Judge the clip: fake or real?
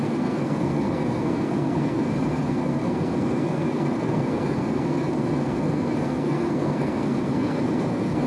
fake